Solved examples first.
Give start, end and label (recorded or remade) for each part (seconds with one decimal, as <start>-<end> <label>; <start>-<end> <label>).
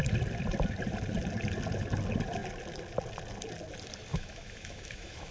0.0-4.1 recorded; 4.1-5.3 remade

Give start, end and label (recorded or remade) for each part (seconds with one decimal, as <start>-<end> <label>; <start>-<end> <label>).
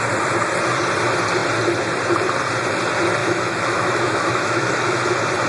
0.0-3.2 recorded; 3.2-5.0 remade; 5.0-5.5 recorded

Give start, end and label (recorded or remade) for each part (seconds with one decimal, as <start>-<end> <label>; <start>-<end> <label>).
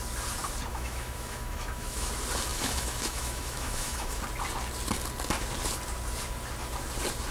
0.0-0.7 recorded; 0.7-2.1 remade; 2.1-2.5 recorded; 2.5-4.2 remade; 4.2-7.3 recorded